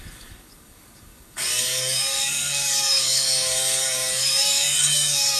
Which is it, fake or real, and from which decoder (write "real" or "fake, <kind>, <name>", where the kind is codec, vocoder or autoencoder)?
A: fake, codec, DAC